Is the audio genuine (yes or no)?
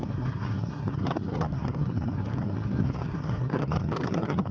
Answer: no